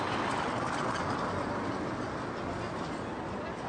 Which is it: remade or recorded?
recorded